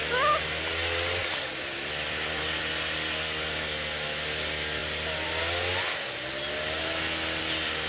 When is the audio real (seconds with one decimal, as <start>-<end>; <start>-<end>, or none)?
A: 0.0-1.2; 2.6-7.9

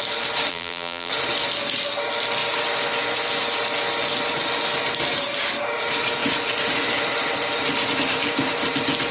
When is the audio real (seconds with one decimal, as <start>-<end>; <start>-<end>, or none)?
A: 0.0-0.5; 1.1-9.1

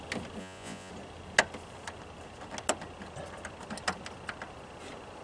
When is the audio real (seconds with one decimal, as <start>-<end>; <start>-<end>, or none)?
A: 0.0-0.4; 0.9-5.2

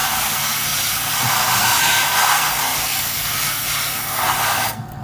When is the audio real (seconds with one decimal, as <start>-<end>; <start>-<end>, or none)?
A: none